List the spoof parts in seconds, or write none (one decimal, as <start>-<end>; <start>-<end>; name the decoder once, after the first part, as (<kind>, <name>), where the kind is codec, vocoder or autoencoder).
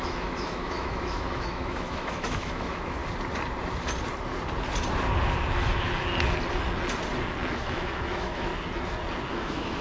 0.0-3.0 (autoencoder, DAC-VAE); 7.5-8.5; 9.3-9.8